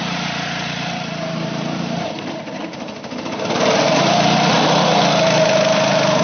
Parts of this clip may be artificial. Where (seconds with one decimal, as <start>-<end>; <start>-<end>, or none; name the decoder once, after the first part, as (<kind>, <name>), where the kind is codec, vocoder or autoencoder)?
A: 0.0-6.2 (vocoder, BigVGAN v2)